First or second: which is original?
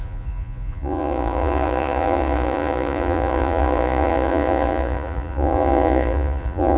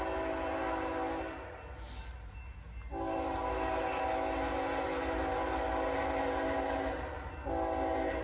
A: second